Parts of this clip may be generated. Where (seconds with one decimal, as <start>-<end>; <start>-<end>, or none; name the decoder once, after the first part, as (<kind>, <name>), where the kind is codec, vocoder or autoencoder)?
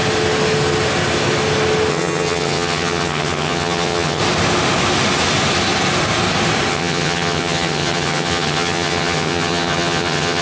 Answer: 1.9-4.2 (vocoder, HiFi-GAN); 6.7-10.4